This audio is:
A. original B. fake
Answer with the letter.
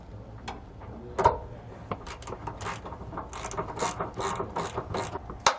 A